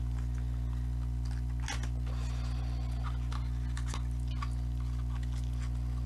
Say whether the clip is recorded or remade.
recorded